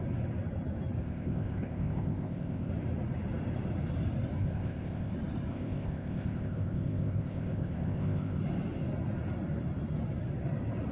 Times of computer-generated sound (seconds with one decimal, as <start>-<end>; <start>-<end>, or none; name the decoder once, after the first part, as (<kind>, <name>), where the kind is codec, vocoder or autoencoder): 1.0-2.7 (codec, ZipCodec); 4.4-5.1; 5.5-8.4